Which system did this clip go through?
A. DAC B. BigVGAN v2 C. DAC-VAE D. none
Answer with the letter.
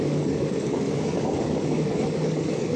A